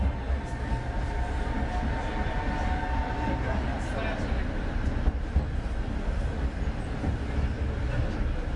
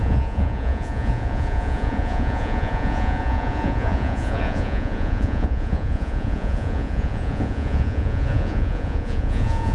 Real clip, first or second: first